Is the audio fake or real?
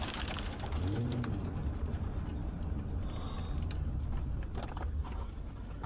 real